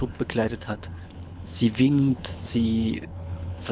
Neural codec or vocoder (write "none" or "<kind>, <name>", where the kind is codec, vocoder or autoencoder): codec, HILCodec